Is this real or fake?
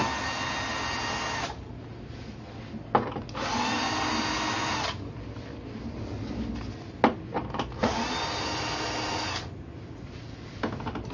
real